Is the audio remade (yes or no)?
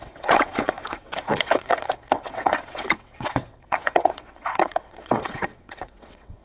yes